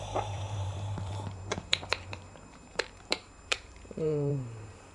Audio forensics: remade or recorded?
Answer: remade